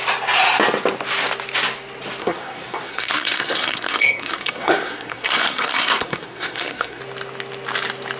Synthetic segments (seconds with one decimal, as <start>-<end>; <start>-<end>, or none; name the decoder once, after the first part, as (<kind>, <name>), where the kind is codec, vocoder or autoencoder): 2.2-7.0 (codec, SNAC)